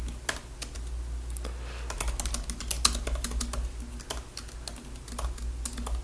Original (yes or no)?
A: yes